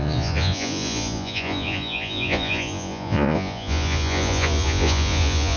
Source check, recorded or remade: remade